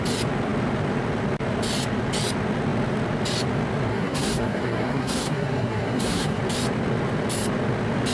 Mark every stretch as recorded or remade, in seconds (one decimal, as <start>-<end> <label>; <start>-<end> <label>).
0.0-3.9 recorded; 3.9-6.4 remade; 6.4-8.1 recorded